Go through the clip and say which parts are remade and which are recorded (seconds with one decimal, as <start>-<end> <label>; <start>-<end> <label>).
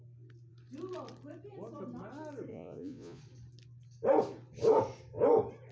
0.0-2.5 recorded; 2.5-3.2 remade; 3.2-5.7 recorded